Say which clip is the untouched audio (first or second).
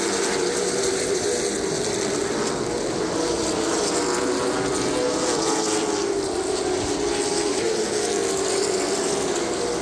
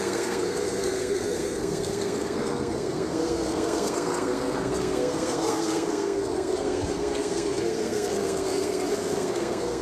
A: first